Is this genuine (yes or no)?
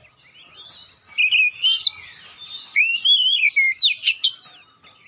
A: yes